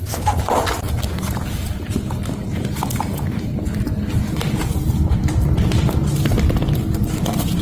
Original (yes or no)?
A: no